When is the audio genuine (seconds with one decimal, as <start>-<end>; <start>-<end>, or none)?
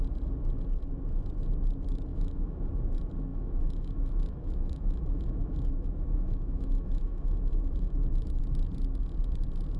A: 0.0-2.1; 2.7-3.3; 8.4-9.8